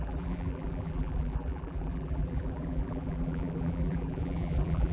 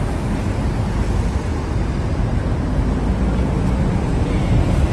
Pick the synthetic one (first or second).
first